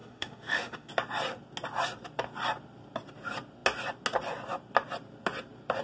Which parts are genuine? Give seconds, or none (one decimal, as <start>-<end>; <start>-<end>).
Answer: 0.9-5.8